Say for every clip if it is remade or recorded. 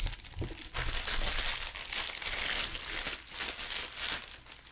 recorded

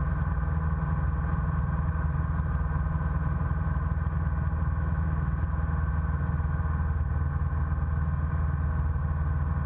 recorded